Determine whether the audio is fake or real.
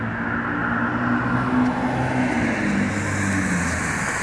real